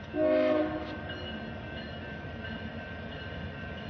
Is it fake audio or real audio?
fake